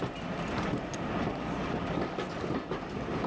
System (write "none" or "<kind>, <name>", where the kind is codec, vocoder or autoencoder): none